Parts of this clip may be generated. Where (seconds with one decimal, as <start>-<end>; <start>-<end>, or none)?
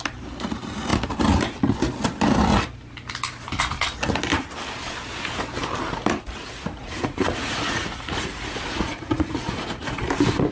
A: 6.8-10.0